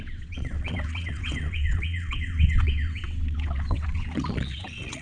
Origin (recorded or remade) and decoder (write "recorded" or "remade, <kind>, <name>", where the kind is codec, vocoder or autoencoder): remade, vocoder, WaveNeXt